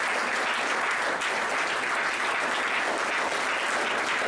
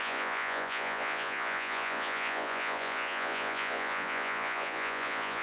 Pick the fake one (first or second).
second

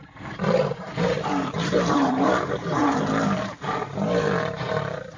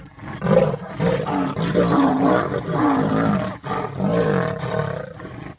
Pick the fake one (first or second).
first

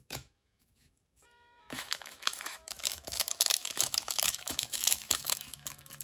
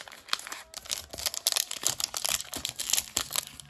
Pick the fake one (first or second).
first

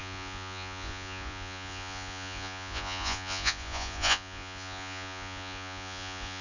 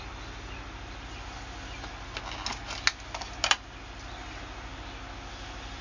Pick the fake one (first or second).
first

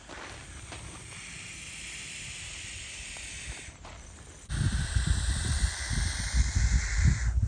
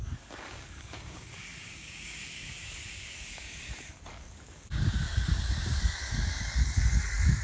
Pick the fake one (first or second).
second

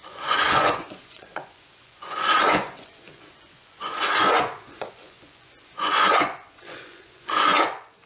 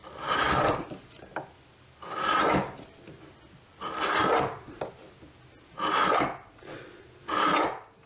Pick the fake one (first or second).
first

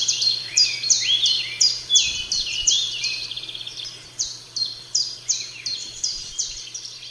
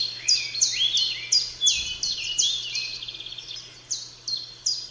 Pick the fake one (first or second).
first